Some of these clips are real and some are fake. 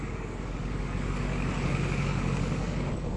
fake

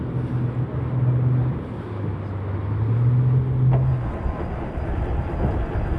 real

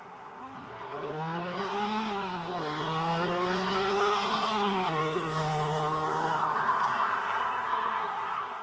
fake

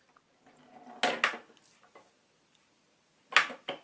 real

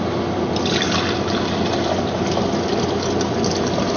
real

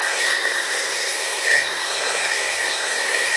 fake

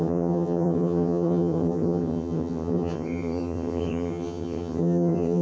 fake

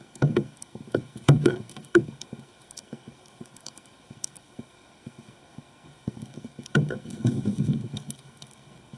fake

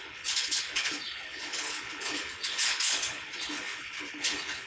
fake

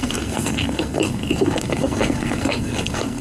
fake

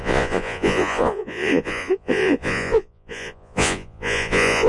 fake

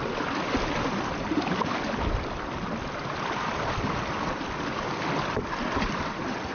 real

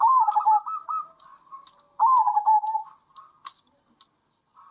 real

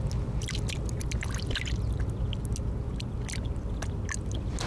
real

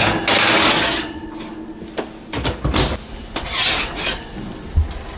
real